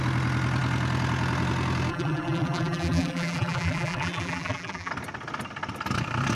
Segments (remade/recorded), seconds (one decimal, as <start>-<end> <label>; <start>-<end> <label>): 0.0-1.9 recorded; 1.9-4.9 remade; 4.9-6.3 recorded